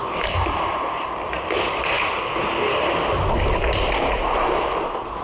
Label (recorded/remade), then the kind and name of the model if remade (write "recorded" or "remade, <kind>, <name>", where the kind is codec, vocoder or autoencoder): recorded